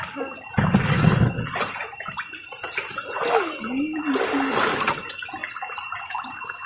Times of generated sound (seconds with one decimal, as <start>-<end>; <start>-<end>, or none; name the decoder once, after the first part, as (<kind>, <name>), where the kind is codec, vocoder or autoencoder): 0.0-5.4 (vocoder, BigVGAN v2)